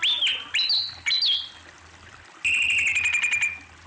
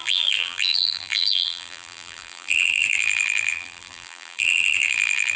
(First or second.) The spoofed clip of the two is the second